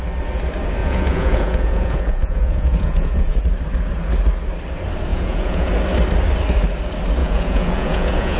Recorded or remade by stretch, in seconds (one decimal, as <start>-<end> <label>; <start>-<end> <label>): 0.0-0.8 recorded; 0.8-3.4 remade; 3.4-5.1 recorded; 5.1-5.7 remade; 5.7-7.2 recorded; 7.2-8.4 remade